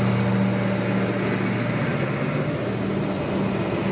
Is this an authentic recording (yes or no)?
yes